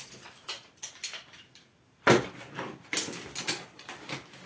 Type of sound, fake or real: real